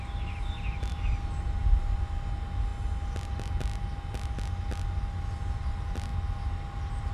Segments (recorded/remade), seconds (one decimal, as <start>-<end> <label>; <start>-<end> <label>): 0.0-7.1 recorded